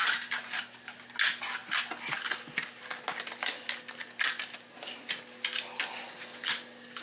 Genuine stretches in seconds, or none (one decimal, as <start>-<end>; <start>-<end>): 0.0-7.0